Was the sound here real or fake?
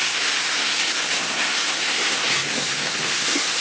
fake